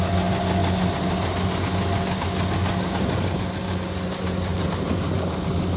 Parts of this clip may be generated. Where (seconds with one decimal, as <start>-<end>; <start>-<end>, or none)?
none